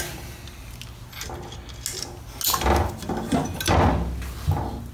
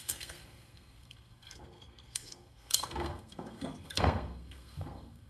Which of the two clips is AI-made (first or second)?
second